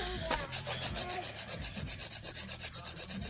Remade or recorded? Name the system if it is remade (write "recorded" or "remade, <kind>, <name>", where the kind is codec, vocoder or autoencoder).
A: remade, vocoder, BigVGAN v2